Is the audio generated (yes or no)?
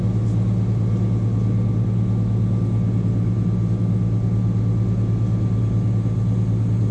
no